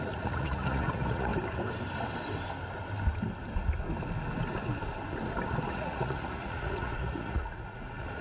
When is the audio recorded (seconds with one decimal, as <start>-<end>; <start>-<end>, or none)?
1.3-5.7